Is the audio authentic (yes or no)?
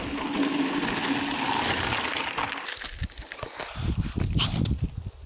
yes